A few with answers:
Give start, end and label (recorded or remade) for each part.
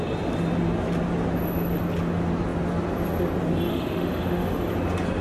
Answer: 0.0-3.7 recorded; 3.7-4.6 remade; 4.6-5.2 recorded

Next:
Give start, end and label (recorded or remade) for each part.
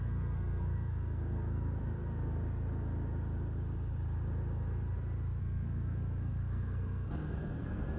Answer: 0.0-1.8 remade; 1.8-5.4 recorded; 5.4-8.0 remade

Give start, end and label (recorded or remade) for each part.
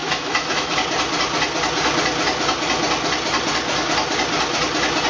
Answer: 0.0-0.7 remade; 0.7-5.1 recorded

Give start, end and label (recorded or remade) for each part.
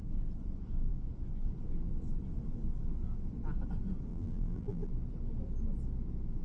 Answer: 0.0-4.1 recorded; 4.1-4.9 remade; 4.9-6.4 recorded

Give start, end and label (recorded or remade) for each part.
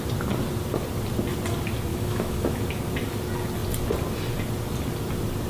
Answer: 0.0-1.9 recorded; 1.9-2.6 remade; 2.6-5.5 recorded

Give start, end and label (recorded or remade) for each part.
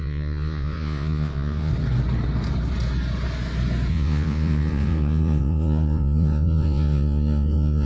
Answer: 0.0-1.7 remade; 1.7-3.9 recorded; 3.9-7.9 remade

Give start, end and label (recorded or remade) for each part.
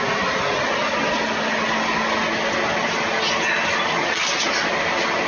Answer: 0.0-5.3 recorded